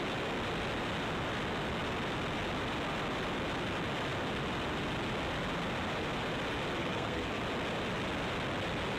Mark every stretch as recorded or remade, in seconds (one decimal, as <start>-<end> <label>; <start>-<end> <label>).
0.0-6.8 recorded; 6.8-7.4 remade; 7.4-9.0 recorded